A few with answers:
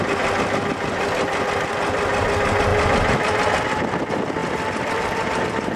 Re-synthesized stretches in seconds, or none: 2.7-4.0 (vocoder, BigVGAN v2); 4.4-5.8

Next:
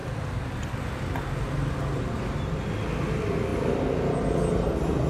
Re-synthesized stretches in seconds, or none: 0.0-0.8 (vocoder, BigVGAN v2)

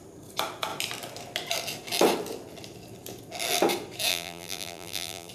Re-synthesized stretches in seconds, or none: 4.1-5.3 (vocoder, BigVGAN v2)

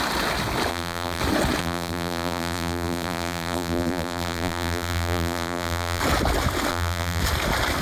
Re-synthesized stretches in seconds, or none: 0.7-1.2 (vocoder, BigVGAN v2); 1.6-6.0; 6.7-7.2

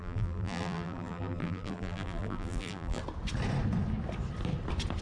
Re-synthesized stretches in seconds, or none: 0.0-3.0 (vocoder, BigVGAN v2)

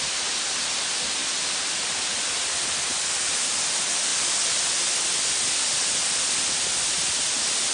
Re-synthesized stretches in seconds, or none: none

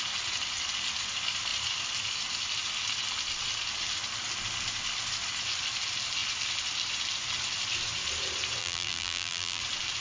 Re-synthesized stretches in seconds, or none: 8.6-9.6 (vocoder, BigVGAN v2)

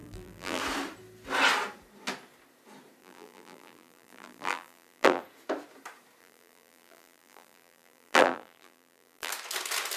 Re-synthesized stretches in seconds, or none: 0.0-0.6 (vocoder, BigVGAN v2); 3.0-5.2; 6.2-9.3